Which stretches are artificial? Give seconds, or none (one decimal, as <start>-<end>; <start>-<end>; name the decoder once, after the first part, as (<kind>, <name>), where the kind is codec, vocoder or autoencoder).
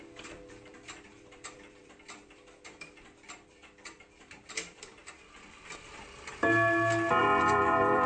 0.0-5.0 (vocoder, BigVGAN v2); 7.2-8.1